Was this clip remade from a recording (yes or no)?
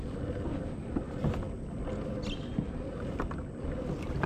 no